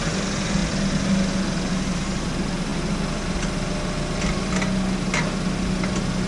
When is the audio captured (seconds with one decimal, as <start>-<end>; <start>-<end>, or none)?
0.0-6.3